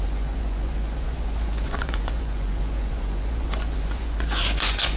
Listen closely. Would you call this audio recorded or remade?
remade